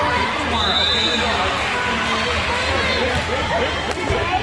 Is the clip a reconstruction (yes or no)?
no